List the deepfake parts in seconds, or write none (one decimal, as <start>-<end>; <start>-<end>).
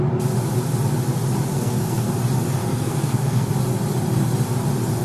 1.5-2.1; 2.6-3.5